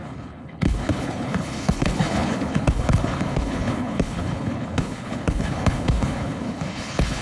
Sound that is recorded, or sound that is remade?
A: remade